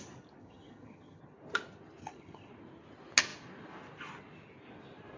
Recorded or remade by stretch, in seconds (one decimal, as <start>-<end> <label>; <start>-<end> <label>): 0.0-0.4 recorded; 0.4-1.2 remade; 1.2-2.0 recorded; 2.0-2.5 remade; 2.5-5.2 recorded